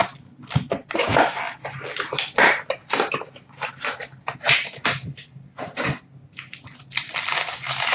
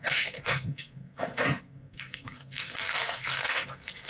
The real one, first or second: first